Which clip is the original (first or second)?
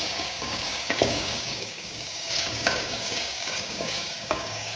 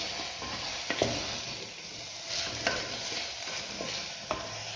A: second